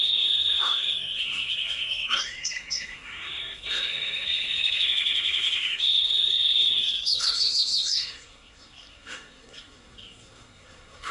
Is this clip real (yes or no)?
no